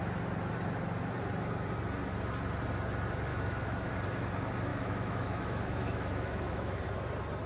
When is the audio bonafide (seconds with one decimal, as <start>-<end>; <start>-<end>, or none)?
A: 0.0-3.3; 3.9-4.7; 6.8-7.5